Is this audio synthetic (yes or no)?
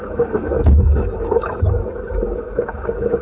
yes